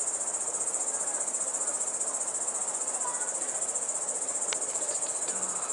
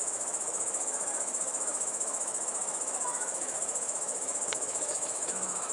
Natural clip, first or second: first